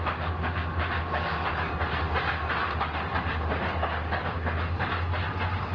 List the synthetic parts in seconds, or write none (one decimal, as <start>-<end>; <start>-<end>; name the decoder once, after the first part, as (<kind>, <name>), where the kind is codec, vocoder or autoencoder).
none